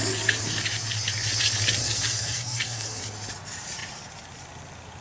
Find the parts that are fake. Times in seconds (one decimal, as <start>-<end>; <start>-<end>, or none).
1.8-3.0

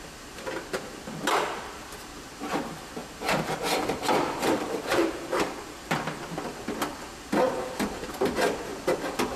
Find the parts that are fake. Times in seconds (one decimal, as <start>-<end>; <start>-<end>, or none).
3.0-5.8

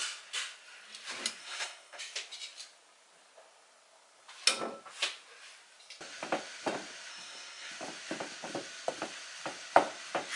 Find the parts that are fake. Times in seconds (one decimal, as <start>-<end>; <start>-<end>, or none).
1.4-2.0; 7.1-7.7

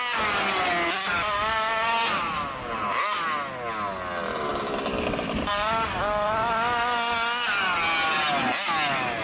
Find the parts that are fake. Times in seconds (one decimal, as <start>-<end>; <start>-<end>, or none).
none

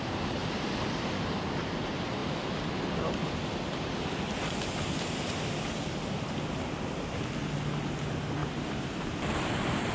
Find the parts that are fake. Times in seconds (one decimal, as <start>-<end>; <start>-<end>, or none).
8.4-9.9

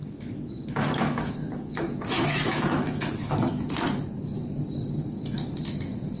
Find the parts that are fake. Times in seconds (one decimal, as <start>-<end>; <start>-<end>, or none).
0.0-3.7

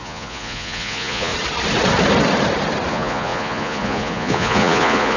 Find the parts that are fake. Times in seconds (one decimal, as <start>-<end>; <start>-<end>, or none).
0.0-1.3; 2.9-5.2